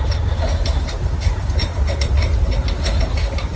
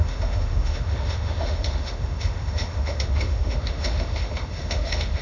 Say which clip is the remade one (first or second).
second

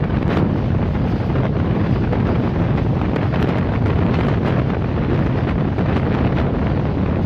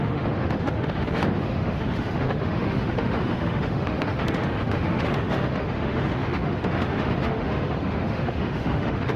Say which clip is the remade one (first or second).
second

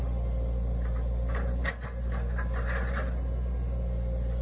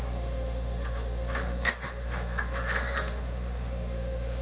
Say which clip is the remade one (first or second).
second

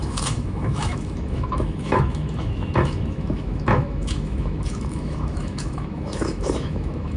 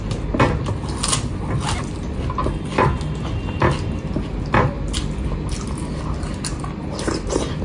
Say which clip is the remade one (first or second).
first